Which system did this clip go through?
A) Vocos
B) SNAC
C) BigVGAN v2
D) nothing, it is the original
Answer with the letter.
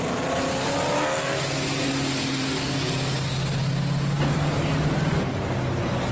D